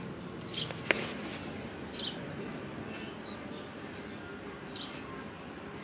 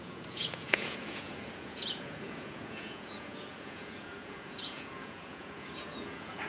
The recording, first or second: first